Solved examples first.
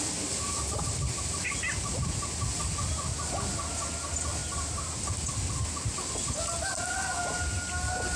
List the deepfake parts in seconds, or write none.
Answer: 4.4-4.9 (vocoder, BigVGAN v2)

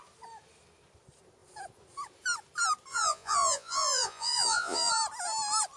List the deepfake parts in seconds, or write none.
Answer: 2.9-4.9 (vocoder, Vocos)

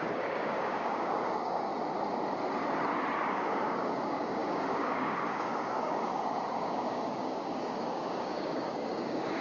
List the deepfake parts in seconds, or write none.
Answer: 0.0-1.7 (codec, DAC); 3.2-9.4

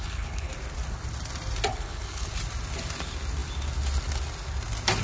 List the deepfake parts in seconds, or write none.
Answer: 0.0-0.5 (codec, HILCodec); 1.7-2.3

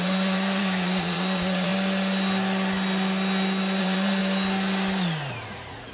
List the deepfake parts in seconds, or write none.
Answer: 0.0-1.7 (vocoder, Vocos); 3.8-4.2; 5.3-5.9